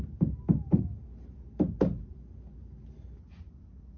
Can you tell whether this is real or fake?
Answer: real